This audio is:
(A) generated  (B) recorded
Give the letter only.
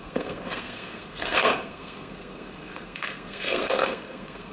A